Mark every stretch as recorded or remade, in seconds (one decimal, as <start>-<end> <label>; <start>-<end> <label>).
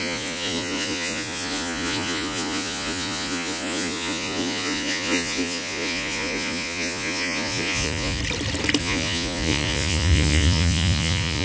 0.0-8.2 remade; 8.2-8.8 recorded; 8.8-11.4 remade